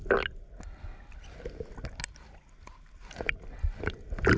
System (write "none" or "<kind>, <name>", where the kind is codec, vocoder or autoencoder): none